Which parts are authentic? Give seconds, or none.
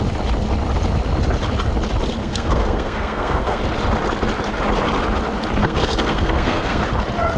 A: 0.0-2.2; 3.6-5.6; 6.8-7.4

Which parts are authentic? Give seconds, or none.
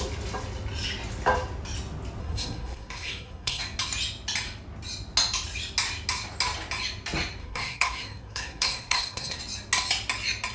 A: 0.0-2.2; 3.6-7.4; 9.4-10.5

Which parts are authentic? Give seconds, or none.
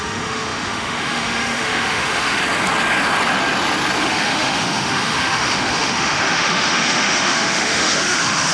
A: 2.4-4.0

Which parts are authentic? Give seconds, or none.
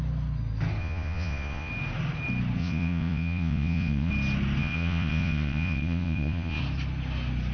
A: 0.0-0.8; 1.7-2.6; 4.1-4.6; 6.6-7.5